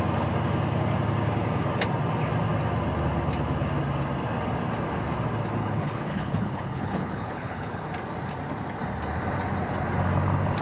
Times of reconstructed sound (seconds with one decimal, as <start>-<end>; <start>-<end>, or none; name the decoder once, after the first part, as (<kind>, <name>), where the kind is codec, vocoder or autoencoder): 5.6-7.9 (codec, HILCodec)